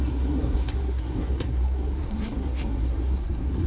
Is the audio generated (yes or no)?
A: yes